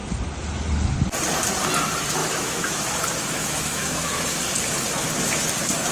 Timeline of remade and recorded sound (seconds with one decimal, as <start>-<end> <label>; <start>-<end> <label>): 0.0-2.2 recorded; 2.2-3.0 remade; 3.0-3.4 recorded; 3.4-4.2 remade; 4.2-5.9 recorded